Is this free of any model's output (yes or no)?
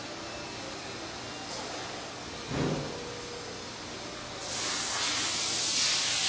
yes